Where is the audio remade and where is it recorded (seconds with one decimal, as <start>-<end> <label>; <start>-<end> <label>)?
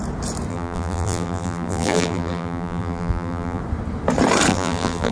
0.0-0.5 recorded; 0.5-3.6 remade; 3.6-4.5 recorded; 4.5-5.1 remade